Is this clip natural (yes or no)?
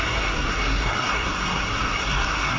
no